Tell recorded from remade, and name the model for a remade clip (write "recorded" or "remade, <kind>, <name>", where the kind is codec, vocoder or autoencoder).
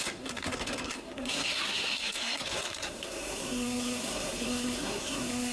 remade, codec, SNAC